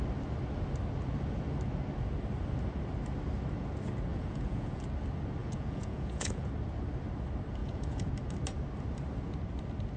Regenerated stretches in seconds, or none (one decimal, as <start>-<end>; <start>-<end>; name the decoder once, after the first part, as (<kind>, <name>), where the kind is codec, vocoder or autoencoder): 4.1-4.8 (vocoder, Vocos); 5.4-6.5; 7.6-8.1